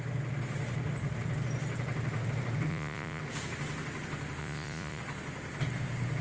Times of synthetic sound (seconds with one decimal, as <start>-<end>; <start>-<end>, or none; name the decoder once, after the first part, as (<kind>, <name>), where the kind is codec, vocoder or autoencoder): 2.7-3.2 (vocoder, Vocos); 4.4-5.0